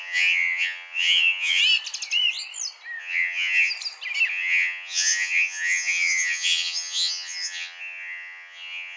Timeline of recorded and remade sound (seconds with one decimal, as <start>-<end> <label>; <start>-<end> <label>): 0.0-1.6 remade; 1.6-3.0 recorded; 3.0-3.7 remade; 3.7-4.3 recorded; 4.3-9.0 remade